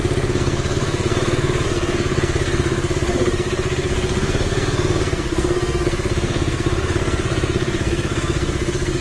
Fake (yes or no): yes